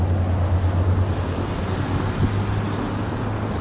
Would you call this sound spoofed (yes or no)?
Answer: no